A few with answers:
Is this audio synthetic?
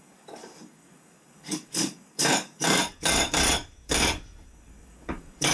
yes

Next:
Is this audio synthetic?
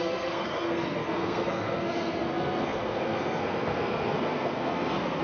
yes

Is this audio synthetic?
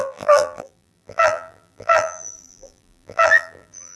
yes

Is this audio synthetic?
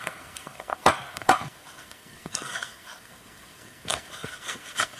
yes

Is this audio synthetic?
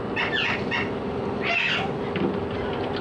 no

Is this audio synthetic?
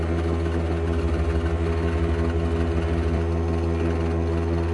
no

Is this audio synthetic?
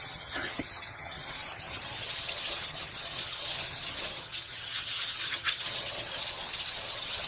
yes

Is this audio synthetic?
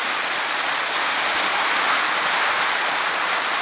no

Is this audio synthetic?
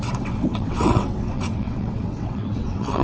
yes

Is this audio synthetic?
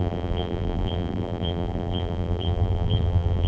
yes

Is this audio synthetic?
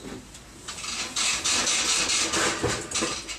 no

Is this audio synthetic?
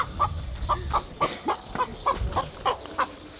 no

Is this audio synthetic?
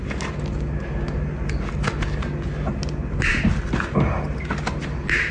no